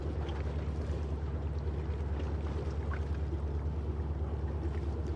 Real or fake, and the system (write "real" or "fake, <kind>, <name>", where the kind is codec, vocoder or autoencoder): real